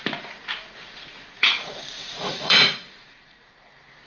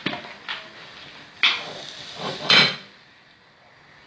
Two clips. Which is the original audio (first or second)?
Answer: second